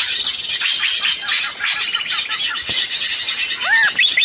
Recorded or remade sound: recorded